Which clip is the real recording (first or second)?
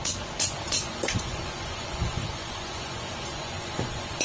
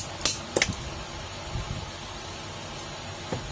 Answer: second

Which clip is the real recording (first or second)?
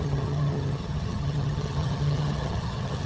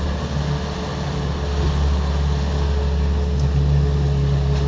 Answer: second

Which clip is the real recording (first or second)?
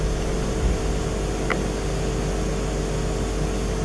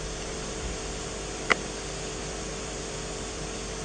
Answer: first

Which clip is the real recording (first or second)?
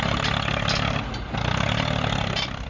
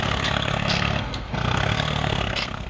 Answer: first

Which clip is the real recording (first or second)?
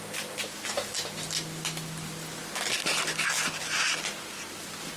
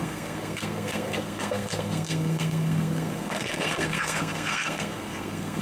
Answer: first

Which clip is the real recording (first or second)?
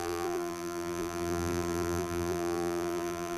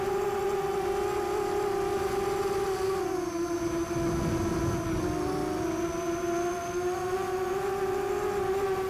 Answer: second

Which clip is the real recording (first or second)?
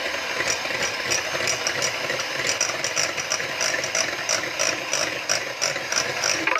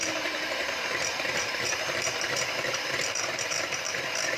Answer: first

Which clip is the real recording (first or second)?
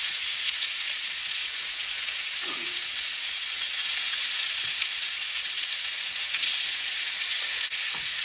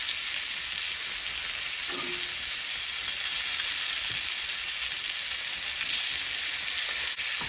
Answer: second